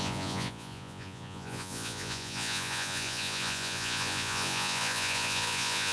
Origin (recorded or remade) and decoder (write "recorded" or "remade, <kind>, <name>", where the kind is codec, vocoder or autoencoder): remade, vocoder, Vocos